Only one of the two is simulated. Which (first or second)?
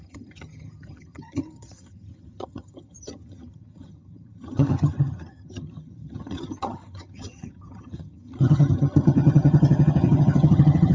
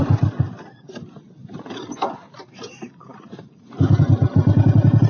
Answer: first